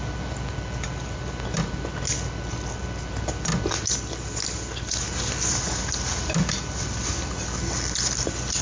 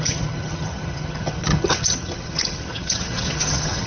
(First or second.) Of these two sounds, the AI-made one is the second